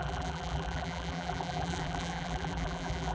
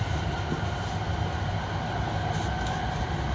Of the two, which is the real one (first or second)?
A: second